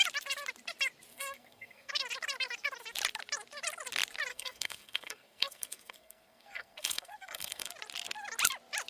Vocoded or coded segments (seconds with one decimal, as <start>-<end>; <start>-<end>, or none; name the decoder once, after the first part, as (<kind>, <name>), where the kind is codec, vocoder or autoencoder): 1.1-1.9 (codec, SNAC); 4.3-7.7